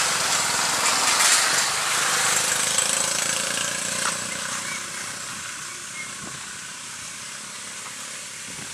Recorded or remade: remade